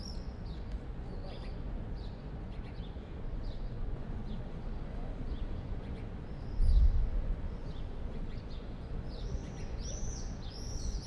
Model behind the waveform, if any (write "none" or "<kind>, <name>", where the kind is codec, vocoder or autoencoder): vocoder, Vocos